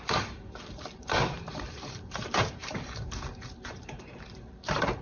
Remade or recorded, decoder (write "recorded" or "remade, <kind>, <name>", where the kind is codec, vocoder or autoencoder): remade, vocoder, BigVGAN v2